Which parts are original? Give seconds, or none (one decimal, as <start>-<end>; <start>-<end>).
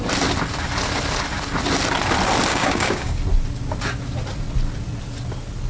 0.0-2.5; 3.2-5.7